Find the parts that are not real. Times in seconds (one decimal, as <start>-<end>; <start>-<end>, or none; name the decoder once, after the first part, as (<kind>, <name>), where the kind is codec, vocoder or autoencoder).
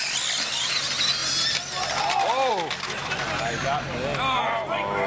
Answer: none